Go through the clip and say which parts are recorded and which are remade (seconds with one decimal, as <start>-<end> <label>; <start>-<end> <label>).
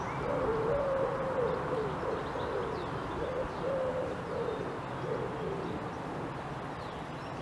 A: 0.0-7.4 recorded